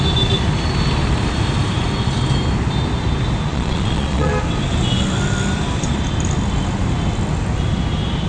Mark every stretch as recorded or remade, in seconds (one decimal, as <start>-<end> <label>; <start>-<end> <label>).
0.0-3.5 recorded; 3.5-4.3 remade; 4.3-8.3 recorded